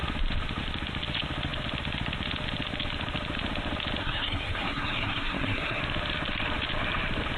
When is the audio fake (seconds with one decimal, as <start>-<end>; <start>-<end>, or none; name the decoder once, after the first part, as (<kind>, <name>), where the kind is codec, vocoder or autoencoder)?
4.0-5.8 (codec, SNAC)